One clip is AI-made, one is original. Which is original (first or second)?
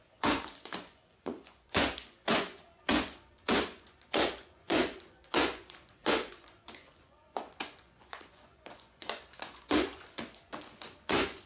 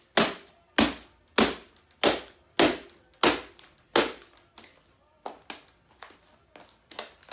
second